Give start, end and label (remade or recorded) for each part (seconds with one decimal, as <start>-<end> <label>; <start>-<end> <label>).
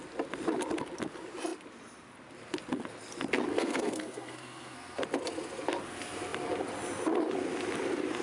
0.0-3.5 recorded; 3.5-5.0 remade; 5.0-8.2 recorded